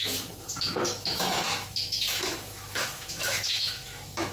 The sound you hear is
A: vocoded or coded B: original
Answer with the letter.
A